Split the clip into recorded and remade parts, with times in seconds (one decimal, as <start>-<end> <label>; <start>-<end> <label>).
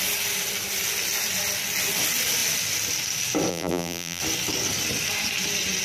0.0-3.5 recorded; 3.5-4.2 remade; 4.2-5.8 recorded